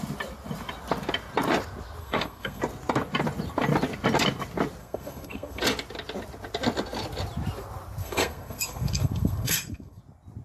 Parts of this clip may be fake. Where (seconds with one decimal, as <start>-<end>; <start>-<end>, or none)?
2.0-2.6; 4.8-5.6; 8.0-10.0